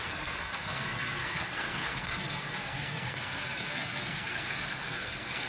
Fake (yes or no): yes